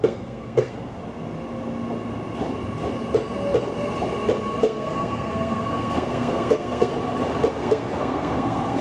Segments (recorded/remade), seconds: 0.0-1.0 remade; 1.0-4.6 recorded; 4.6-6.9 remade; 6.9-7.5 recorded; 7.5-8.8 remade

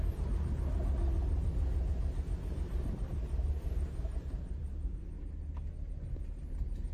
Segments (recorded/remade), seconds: 0.0-6.9 recorded

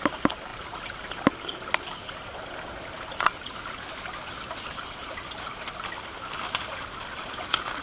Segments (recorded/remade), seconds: 0.0-7.8 recorded

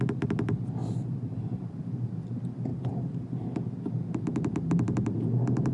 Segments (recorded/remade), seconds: 0.0-0.8 recorded; 0.8-1.7 remade; 1.7-2.7 recorded; 2.7-3.3 remade; 3.3-5.7 recorded

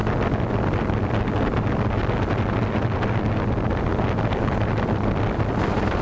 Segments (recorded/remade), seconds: 0.0-6.0 recorded